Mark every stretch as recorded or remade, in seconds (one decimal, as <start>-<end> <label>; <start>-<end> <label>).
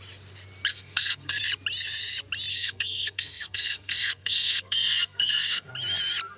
0.0-0.7 recorded; 0.7-1.4 remade; 1.4-2.5 recorded; 2.5-5.7 remade; 5.7-6.4 recorded